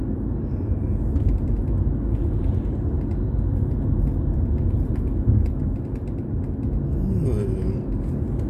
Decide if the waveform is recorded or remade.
recorded